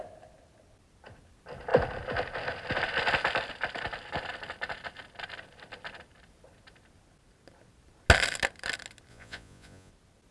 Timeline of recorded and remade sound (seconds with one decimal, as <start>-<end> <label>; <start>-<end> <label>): 0.0-9.1 recorded; 9.1-9.9 remade; 9.9-10.3 recorded